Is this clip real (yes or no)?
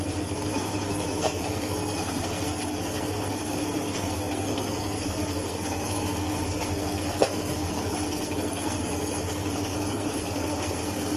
no